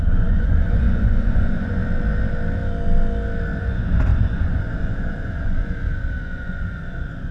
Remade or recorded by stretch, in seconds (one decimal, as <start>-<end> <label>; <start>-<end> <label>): 0.0-1.8 remade; 1.8-3.6 recorded; 3.6-7.3 remade